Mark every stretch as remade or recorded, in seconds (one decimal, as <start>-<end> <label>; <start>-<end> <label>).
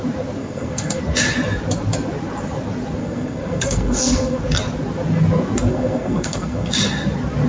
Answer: 0.0-0.4 recorded; 0.4-1.0 remade; 1.0-3.0 recorded; 3.0-4.4 remade; 4.4-5.7 recorded; 5.7-6.7 remade; 6.7-7.5 recorded